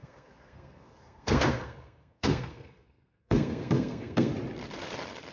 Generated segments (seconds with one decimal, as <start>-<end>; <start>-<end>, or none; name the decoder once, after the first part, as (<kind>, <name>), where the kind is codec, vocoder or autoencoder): 0.0-4.3 (codec, SNAC)